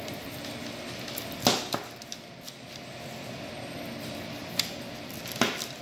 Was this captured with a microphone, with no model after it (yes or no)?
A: yes